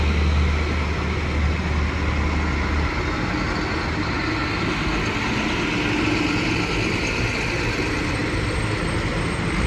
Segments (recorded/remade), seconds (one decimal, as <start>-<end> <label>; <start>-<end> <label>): 0.0-9.7 recorded